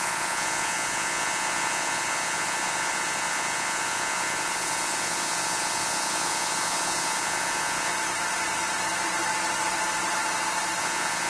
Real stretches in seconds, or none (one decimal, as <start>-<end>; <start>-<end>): 7.9-10.8